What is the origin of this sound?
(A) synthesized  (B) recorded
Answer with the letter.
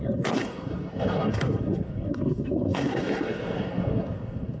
A